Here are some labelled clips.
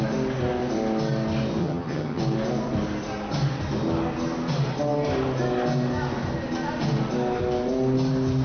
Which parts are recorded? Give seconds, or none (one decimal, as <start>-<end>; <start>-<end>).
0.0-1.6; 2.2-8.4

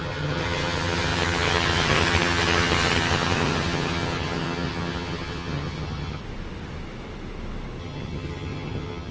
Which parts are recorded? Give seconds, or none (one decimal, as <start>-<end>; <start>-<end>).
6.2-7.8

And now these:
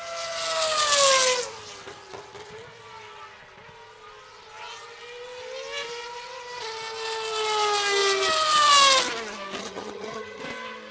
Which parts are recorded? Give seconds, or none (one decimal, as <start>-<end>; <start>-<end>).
0.0-9.6; 10.4-10.9